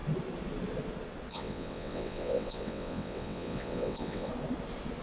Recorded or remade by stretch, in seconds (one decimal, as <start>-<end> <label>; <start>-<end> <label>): 0.0-1.3 recorded; 1.3-4.3 remade; 4.3-5.0 recorded